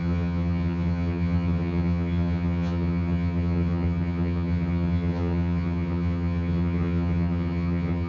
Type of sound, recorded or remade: remade